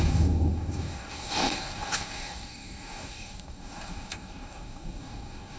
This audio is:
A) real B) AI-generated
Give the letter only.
B